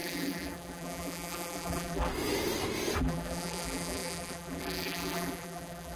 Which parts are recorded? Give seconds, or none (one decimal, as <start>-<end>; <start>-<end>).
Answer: 2.1-3.0